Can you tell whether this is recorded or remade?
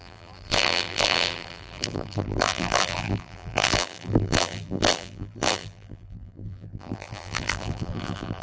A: remade